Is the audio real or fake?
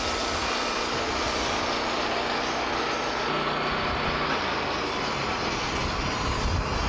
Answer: real